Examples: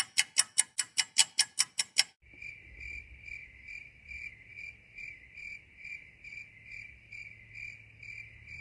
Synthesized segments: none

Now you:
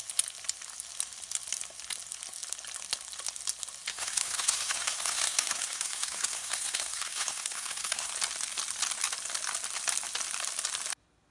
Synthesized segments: 3.9-8.1 (codec, SNAC)

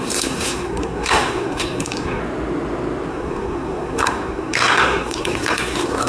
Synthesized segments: 0.0-2.2 (codec, SNAC); 3.1-6.1